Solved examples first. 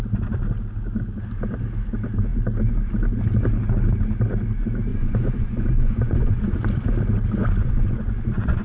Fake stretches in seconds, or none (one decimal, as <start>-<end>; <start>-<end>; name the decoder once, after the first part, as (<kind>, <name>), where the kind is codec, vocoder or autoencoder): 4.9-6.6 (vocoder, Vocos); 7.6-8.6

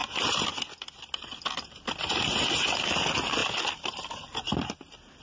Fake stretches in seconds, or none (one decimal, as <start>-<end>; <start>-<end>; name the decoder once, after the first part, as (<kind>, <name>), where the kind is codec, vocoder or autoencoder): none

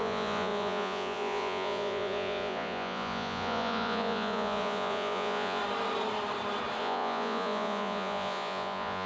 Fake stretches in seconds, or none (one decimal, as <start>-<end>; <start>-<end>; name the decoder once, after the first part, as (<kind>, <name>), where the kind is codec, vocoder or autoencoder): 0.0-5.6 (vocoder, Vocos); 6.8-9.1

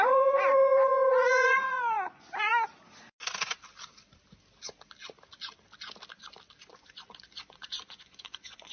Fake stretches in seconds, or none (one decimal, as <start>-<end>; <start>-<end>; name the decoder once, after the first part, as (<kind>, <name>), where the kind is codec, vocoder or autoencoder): 0.0-2.5 (vocoder, Vocos); 6.7-8.7

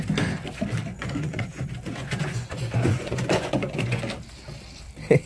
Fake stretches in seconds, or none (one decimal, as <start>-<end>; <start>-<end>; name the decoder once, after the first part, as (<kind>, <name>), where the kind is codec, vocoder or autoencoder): 0.9-4.0 (vocoder, Vocos)